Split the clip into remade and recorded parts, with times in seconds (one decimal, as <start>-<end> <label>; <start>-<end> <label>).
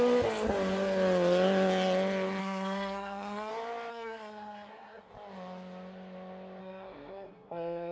0.0-2.4 recorded; 2.4-3.5 remade; 3.5-3.9 recorded; 3.9-5.1 remade; 5.1-6.6 recorded; 6.6-7.9 remade